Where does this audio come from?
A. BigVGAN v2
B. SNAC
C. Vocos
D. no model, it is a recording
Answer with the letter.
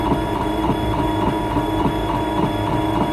A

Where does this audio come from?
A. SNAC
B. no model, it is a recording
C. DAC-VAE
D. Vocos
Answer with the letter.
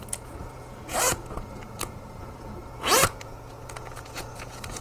D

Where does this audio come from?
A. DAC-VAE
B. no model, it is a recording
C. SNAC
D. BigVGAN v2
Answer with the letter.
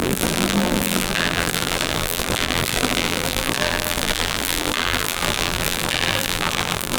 D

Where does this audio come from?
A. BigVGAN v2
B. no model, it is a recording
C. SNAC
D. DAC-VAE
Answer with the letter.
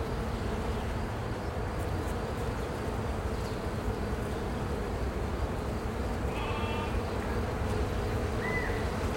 B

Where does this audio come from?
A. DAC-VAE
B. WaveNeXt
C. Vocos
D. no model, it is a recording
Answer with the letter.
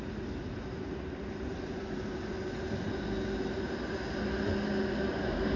D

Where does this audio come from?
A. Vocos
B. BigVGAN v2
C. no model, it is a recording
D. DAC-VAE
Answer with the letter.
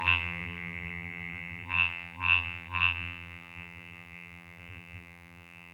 B